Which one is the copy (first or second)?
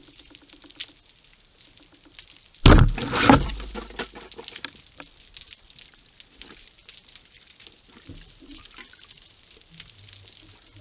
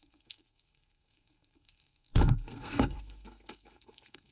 second